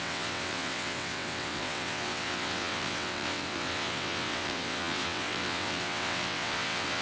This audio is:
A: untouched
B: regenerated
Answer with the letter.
B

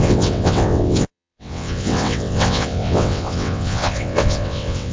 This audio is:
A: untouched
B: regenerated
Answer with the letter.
B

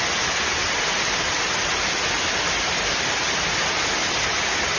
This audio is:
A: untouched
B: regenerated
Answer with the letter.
A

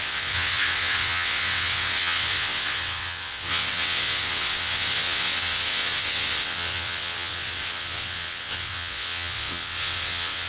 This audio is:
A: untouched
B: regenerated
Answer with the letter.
B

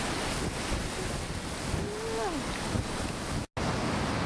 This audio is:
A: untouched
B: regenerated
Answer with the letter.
A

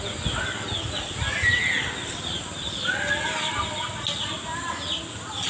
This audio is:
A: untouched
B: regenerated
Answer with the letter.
A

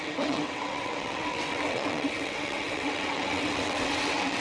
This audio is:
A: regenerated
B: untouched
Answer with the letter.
A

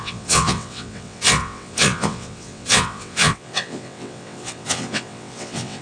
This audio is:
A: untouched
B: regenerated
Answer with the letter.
B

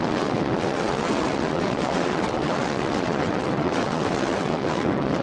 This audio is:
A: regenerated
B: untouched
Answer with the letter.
A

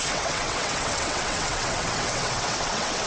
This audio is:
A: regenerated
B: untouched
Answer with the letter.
A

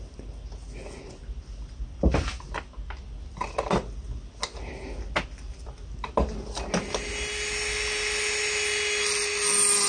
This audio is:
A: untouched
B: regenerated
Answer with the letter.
A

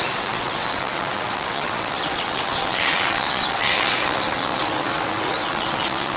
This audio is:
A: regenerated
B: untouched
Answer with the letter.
A